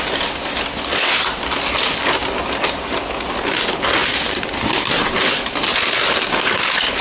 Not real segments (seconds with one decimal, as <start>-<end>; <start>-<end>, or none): 4.0-4.8